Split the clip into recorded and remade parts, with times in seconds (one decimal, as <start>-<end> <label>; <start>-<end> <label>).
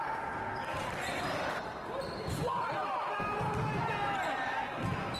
0.0-5.2 recorded